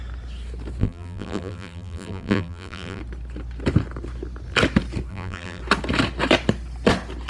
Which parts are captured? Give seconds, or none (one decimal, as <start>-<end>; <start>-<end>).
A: 0.0-0.8; 3.0-5.1; 5.6-7.3